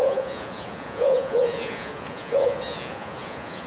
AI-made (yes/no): yes